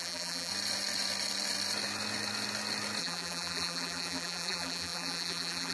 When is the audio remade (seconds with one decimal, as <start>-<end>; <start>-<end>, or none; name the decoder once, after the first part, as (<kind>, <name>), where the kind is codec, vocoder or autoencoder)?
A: 0.0-0.5 (vocoder, BigVGAN v2); 3.0-5.7